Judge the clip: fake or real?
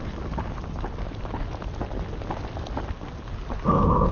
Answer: real